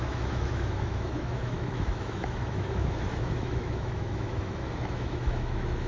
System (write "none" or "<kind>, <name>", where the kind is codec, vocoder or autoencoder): autoencoder, DAC-VAE